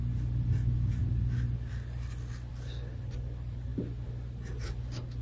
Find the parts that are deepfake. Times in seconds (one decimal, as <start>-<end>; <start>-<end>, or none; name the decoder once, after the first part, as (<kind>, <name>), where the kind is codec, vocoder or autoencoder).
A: none